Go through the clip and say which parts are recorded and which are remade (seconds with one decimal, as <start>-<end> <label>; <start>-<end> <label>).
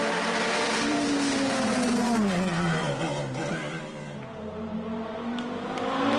0.0-6.2 recorded